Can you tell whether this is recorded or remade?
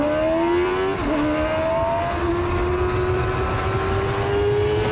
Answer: recorded